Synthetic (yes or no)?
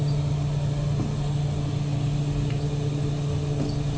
no